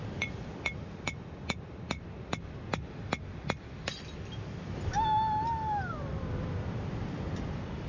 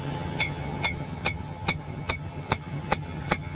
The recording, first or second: first